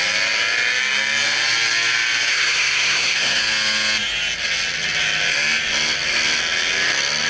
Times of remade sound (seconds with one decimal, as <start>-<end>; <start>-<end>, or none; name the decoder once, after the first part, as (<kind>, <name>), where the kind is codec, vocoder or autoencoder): 2.3-3.4 (codec, SNAC)